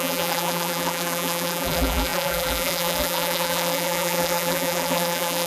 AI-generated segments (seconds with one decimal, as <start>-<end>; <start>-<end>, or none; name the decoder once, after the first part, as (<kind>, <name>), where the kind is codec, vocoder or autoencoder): 0.0-5.5 (vocoder, BigVGAN v2)